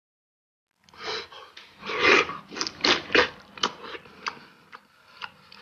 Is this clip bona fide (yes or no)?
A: yes